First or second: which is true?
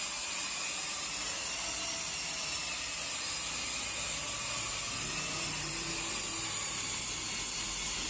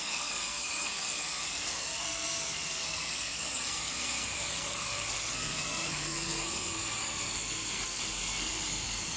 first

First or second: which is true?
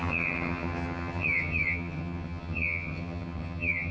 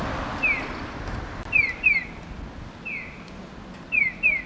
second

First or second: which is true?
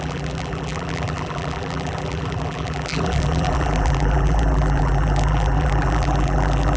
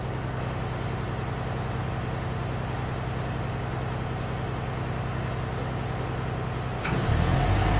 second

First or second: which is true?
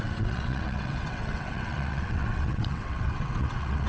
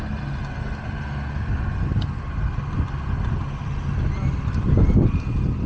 second